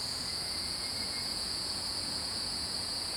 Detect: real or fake fake